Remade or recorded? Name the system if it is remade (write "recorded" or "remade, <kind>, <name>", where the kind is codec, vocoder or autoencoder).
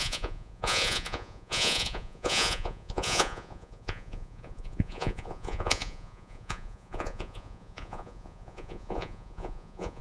remade, vocoder, Vocos